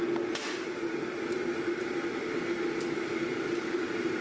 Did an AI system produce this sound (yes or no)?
no